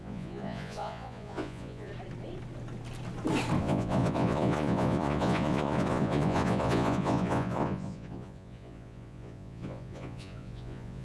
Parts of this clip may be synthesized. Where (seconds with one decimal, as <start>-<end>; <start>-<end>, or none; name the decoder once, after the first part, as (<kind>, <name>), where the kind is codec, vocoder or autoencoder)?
0.0-1.9 (vocoder, Vocos); 3.6-11.0